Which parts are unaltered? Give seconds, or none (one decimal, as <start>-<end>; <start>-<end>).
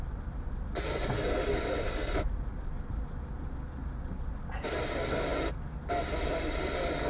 0.0-7.1